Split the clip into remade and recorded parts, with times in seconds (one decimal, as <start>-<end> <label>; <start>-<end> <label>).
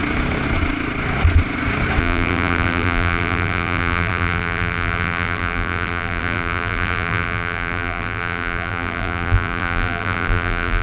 0.0-2.0 recorded; 2.0-10.8 remade